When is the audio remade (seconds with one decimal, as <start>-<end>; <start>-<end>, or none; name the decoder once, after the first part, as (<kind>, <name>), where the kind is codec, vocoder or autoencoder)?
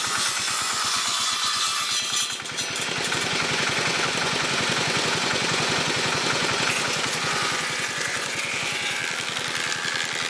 0.0-1.7 (vocoder, Vocos); 3.1-9.0